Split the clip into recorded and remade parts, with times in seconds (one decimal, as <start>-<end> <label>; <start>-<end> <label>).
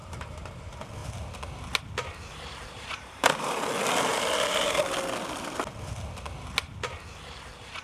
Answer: 0.0-0.6 remade; 0.6-2.3 recorded; 2.3-3.5 remade; 3.5-7.8 recorded